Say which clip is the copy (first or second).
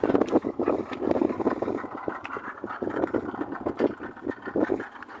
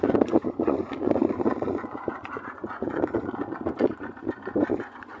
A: second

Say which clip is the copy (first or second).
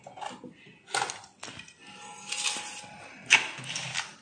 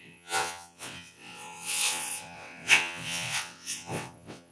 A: second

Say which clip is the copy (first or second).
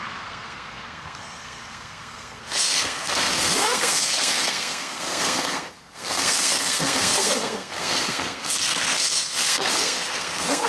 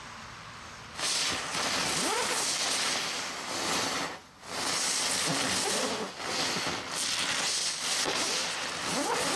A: first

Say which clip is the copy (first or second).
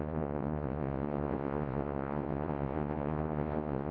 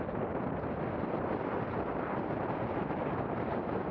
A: first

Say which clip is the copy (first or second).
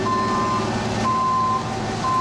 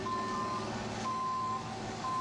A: second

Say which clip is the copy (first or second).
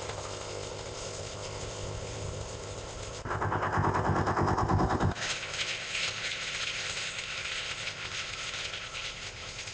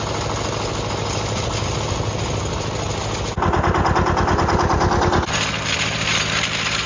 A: first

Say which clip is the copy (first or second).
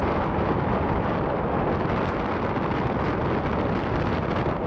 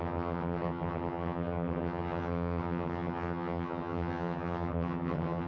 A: second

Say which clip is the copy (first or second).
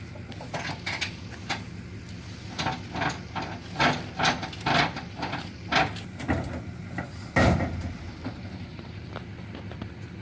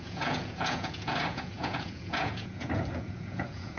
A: second